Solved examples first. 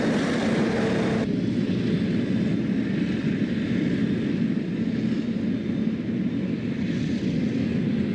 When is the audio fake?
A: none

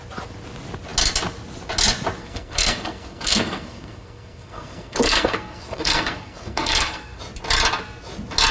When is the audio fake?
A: 2.2-7.2 (codec, SNAC)